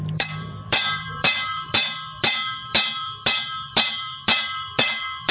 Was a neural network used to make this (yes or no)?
yes